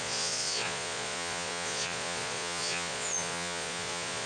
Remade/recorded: remade